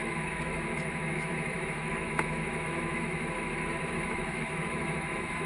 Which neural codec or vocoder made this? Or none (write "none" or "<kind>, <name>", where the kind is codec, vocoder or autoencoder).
autoencoder, DAC-VAE